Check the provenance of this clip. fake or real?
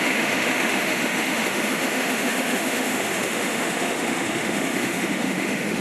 fake